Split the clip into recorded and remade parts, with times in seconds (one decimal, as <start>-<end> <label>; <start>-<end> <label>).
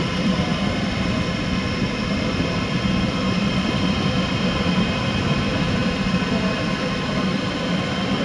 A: 0.0-8.2 remade